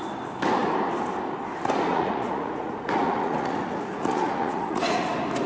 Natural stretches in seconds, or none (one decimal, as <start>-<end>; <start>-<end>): 0.0-1.9; 5.1-5.5